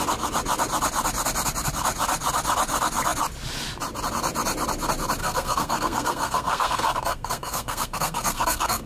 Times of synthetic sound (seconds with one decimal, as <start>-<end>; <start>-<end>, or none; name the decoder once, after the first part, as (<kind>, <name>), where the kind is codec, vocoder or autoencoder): 5.2-8.9 (codec, SNAC)